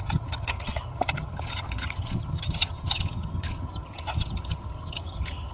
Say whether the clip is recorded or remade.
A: remade